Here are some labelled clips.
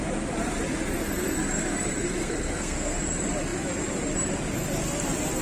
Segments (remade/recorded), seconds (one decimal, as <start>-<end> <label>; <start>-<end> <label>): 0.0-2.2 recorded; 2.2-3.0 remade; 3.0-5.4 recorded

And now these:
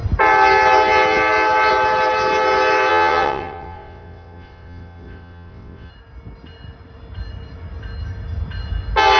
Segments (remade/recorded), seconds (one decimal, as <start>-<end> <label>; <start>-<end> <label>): 0.0-2.9 recorded; 2.9-5.9 remade; 5.9-9.2 recorded

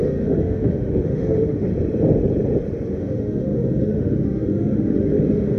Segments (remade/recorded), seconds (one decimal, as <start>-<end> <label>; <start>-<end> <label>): 0.0-1.7 remade; 1.7-2.9 recorded; 2.9-5.6 remade

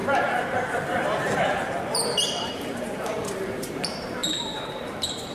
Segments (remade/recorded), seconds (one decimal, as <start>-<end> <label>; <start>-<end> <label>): 0.0-5.3 remade